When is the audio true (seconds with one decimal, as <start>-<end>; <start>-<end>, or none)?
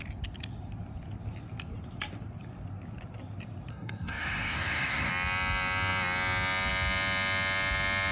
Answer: 0.0-3.7; 5.1-8.1